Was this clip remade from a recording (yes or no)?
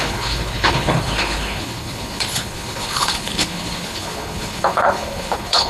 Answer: yes